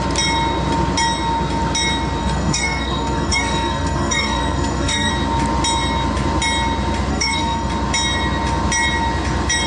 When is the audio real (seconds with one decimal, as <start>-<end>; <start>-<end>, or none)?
0.0-2.2; 5.1-7.1; 7.7-9.7

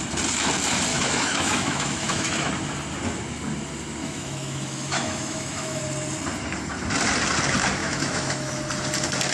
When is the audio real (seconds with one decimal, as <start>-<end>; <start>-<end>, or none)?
0.0-0.9; 2.5-4.0; 5.8-7.8; 8.6-9.3

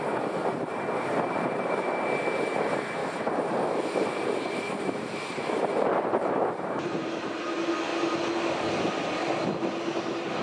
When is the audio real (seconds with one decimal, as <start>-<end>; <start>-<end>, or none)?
0.0-0.5; 1.7-3.0; 7.4-10.4

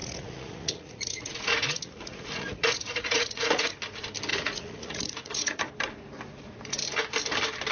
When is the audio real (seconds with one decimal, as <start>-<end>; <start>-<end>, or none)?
3.7-4.3; 5.6-7.7

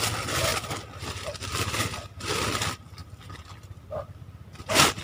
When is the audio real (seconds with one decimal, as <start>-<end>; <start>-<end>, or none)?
0.0-0.5; 2.3-3.0

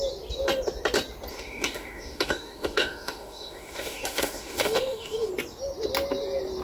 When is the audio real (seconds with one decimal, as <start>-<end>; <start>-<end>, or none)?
0.0-1.3; 5.3-6.6

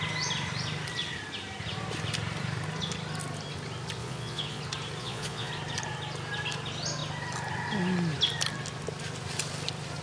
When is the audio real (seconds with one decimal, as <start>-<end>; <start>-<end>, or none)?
0.0-4.0; 4.6-5.0; 5.5-10.0

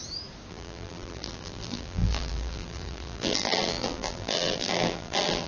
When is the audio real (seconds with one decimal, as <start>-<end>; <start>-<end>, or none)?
0.0-0.5